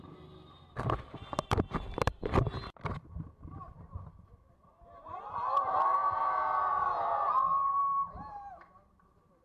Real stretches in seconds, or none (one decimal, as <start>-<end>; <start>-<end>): 0.0-9.4